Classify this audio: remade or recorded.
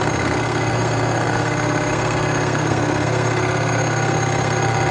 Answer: remade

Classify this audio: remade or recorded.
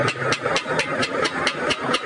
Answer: recorded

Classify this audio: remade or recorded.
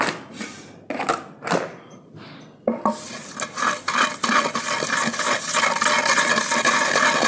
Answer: recorded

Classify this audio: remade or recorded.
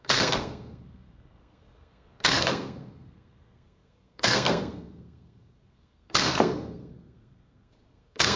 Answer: remade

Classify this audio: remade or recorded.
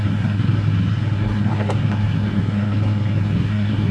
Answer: remade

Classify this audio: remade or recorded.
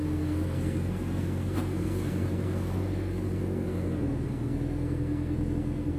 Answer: remade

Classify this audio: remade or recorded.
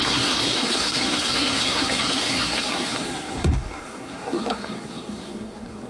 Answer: remade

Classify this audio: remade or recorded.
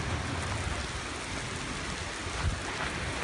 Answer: recorded